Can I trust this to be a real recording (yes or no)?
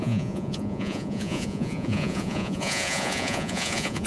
no